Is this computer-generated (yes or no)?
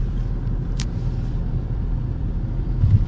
yes